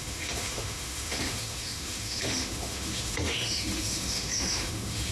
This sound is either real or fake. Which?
fake